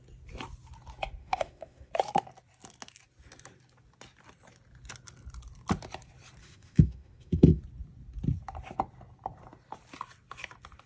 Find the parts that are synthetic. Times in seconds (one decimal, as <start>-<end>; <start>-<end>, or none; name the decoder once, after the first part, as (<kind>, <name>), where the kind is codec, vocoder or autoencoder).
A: 1.2-1.9 (autoencoder, DAC-VAE); 6.4-7.6